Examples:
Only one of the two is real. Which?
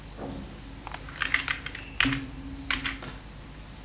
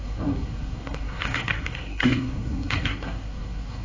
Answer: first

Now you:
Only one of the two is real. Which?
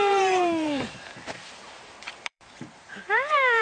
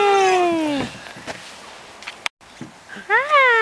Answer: second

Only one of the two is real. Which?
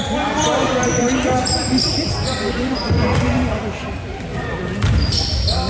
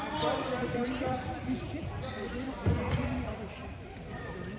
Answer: first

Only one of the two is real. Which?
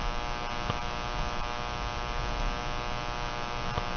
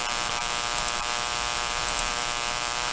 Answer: first